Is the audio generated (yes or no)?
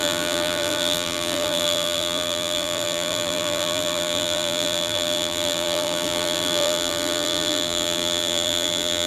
yes